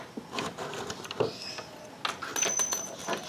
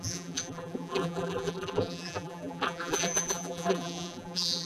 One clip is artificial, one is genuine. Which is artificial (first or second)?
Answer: second